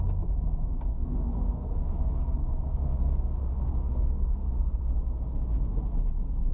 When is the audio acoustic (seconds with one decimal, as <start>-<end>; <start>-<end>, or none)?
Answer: 0.0-0.9; 4.8-6.5